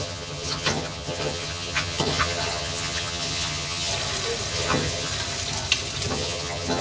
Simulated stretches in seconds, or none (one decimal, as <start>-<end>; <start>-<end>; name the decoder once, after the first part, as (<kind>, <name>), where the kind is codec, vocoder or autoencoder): 0.0-3.9 (vocoder, HiFi-GAN); 4.5-5.1; 6.1-6.8